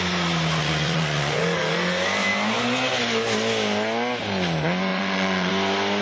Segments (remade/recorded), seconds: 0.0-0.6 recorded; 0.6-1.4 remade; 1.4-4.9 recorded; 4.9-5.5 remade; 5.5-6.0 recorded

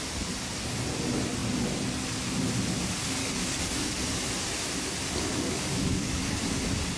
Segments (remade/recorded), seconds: 0.0-3.2 recorded; 3.2-4.0 remade; 4.0-5.3 recorded; 5.3-6.4 remade; 6.4-7.0 recorded

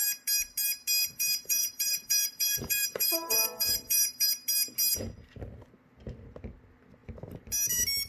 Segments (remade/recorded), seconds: 0.0-1.0 recorded; 1.0-4.3 remade; 4.3-8.1 recorded

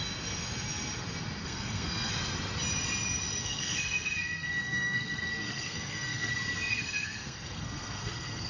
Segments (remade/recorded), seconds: 0.0-1.4 recorded; 1.4-2.1 remade; 2.1-3.4 recorded; 3.4-6.3 remade; 6.3-6.7 recorded; 6.7-8.5 remade

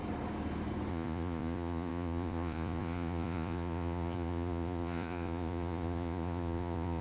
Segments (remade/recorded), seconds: 0.0-0.9 recorded; 0.9-7.0 remade

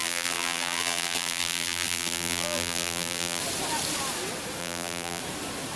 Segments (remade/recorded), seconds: 0.0-3.4 remade; 3.4-4.6 recorded; 4.6-5.2 remade; 5.2-5.8 recorded

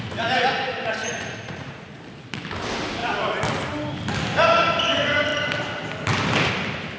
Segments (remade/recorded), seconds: 0.0-1.0 recorded; 1.0-2.0 remade; 2.0-7.0 recorded

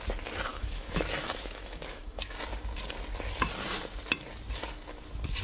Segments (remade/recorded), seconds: 0.0-0.5 recorded; 0.5-2.2 remade; 2.2-5.4 recorded